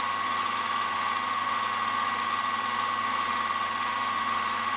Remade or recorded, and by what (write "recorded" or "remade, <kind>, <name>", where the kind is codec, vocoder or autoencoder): recorded